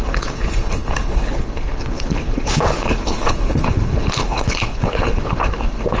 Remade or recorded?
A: remade